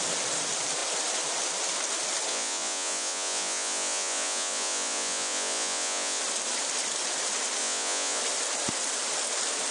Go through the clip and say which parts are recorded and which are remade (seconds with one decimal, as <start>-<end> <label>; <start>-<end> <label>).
0.0-2.3 recorded; 2.3-6.2 remade; 6.2-7.6 recorded; 7.6-8.2 remade; 8.2-9.7 recorded